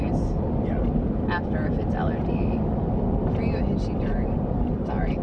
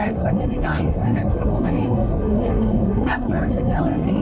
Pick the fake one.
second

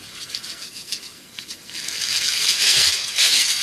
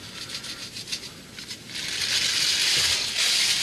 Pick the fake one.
first